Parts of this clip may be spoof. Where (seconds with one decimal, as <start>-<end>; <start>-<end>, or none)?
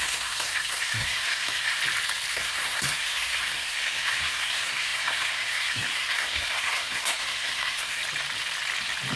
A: 0.0-1.8; 2.3-8.0